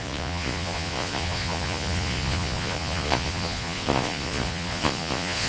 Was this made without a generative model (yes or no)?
no